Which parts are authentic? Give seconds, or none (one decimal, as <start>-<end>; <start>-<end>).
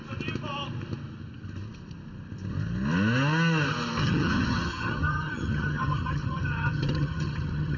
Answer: 0.0-4.0